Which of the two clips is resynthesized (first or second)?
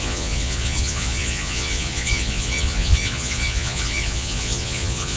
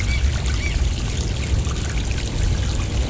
first